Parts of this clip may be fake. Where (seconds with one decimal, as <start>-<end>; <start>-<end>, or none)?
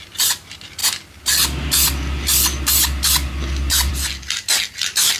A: none